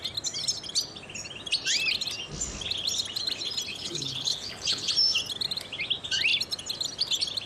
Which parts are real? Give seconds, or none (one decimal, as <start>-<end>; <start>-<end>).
0.0-3.7; 4.9-7.5